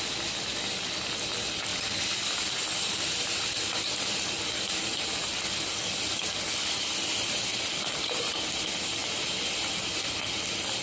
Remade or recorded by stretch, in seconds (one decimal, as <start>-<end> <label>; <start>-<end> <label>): 0.0-1.7 recorded; 1.7-4.6 remade; 4.6-7.5 recorded; 7.5-8.6 remade; 8.6-10.8 recorded

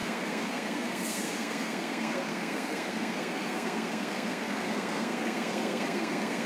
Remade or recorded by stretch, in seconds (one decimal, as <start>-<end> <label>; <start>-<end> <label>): 0.0-6.5 remade

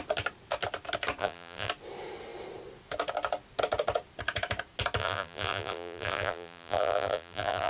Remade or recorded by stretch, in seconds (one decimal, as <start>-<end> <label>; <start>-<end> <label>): 0.0-1.2 recorded; 1.2-1.7 remade; 1.7-5.0 recorded; 5.0-7.7 remade

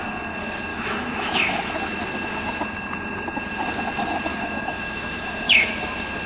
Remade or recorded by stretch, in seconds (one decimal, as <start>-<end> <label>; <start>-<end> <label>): 0.0-0.7 recorded; 0.7-1.7 remade; 1.7-4.3 recorded; 4.3-5.7 remade; 5.7-6.3 recorded

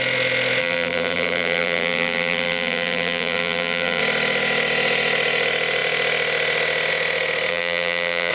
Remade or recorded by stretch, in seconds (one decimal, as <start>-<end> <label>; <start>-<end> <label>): 0.0-0.6 recorded; 0.6-4.0 remade; 4.0-7.5 recorded; 7.5-8.3 remade